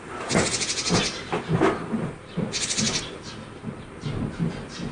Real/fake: real